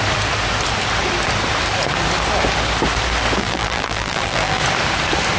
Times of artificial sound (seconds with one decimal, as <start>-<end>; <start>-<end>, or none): 3.4-4.6